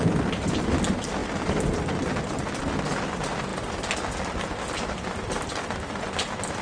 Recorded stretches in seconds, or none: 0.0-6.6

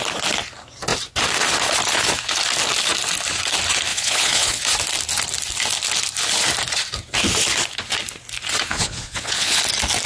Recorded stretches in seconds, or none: 0.0-3.9; 4.6-8.7; 9.6-10.1

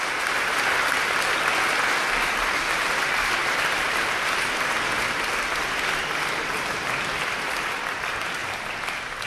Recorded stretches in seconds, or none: 0.0-9.3